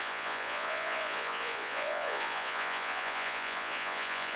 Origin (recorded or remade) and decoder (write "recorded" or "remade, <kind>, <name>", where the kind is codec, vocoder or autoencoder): remade, vocoder, Vocos